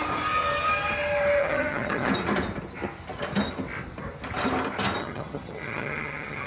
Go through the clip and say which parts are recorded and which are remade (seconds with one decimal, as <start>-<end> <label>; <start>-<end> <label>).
0.0-1.4 recorded; 1.4-2.1 remade; 2.1-5.0 recorded; 5.0-6.5 remade